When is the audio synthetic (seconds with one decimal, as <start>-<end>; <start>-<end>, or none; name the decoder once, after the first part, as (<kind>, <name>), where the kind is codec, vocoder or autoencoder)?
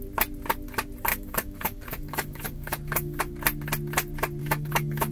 1.1-3.2 (codec, DAC); 4.4-5.1